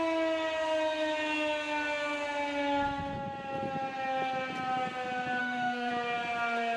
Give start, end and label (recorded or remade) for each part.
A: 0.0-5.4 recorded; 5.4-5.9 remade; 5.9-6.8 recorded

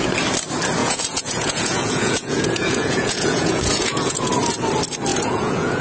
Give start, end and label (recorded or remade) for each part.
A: 0.0-0.8 recorded; 0.8-4.3 remade; 4.3-5.1 recorded; 5.1-5.8 remade

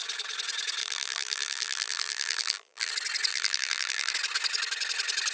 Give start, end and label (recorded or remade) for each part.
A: 0.0-0.8 recorded; 0.8-2.9 remade; 2.9-3.3 recorded; 3.3-4.1 remade; 4.1-5.3 recorded

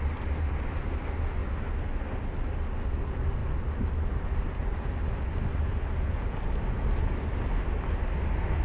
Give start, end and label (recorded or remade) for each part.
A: 0.0-8.6 recorded

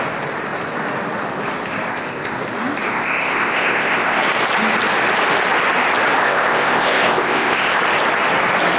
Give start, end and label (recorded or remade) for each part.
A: 0.0-1.9 recorded; 1.9-2.4 remade; 2.4-2.9 recorded; 2.9-4.2 remade; 4.2-6.2 recorded; 6.2-7.8 remade; 7.8-8.8 recorded